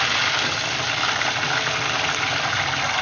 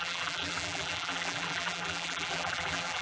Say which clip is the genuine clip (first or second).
first